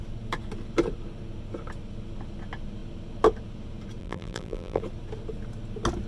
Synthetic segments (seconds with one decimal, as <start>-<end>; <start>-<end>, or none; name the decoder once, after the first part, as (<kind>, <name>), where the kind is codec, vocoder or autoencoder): 4.0-4.8 (vocoder, BigVGAN v2)